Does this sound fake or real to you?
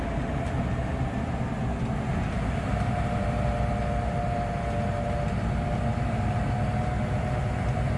real